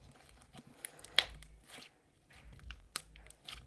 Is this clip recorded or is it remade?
recorded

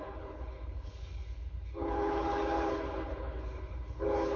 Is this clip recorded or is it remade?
remade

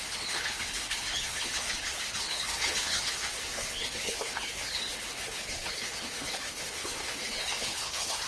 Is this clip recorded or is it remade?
remade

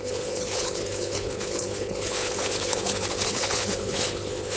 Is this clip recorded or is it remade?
remade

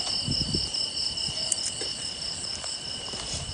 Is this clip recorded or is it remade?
recorded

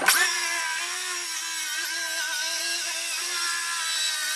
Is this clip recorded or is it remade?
recorded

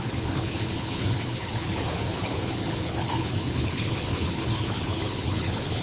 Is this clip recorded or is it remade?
remade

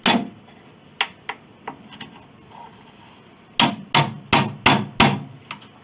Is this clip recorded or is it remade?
recorded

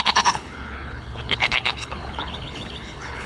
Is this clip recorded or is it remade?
remade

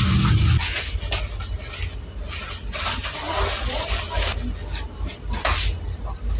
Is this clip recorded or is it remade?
recorded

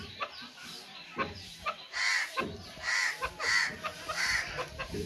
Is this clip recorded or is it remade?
recorded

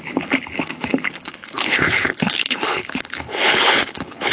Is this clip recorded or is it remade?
remade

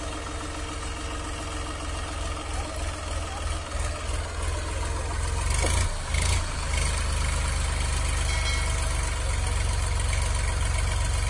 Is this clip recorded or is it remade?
recorded